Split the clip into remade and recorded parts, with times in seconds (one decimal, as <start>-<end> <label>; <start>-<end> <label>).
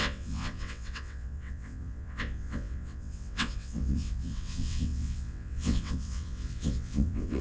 0.0-7.4 remade